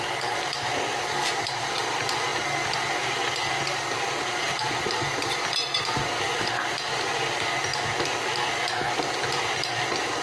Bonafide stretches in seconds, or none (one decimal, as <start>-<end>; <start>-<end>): 7.7-8.9